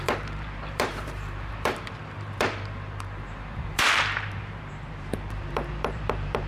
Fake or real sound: fake